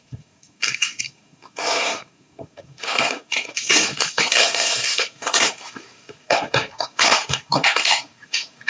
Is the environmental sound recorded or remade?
remade